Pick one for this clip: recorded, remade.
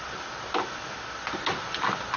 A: recorded